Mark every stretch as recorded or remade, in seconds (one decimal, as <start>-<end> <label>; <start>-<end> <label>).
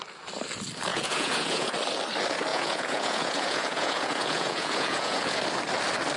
0.0-0.9 recorded; 0.9-1.7 remade; 1.7-2.5 recorded; 2.5-5.4 remade; 5.4-6.2 recorded